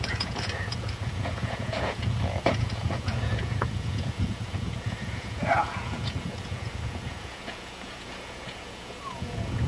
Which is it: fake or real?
fake